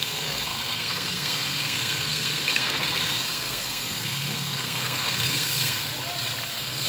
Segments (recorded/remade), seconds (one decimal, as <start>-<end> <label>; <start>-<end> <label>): 0.0-5.9 remade; 5.9-6.5 recorded; 6.5-6.9 remade